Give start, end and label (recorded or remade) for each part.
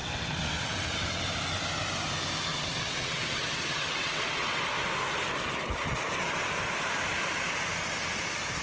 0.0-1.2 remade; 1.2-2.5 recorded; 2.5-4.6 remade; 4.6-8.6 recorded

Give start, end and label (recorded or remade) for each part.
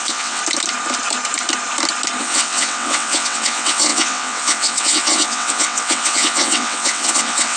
0.0-0.4 remade; 0.4-2.2 recorded; 2.2-7.6 remade